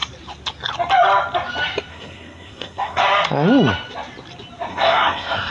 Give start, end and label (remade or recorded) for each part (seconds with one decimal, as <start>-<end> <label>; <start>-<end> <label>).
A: 0.0-1.9 recorded; 1.9-3.0 remade; 3.0-4.7 recorded; 4.7-5.5 remade